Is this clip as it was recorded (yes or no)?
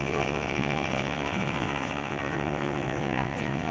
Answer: no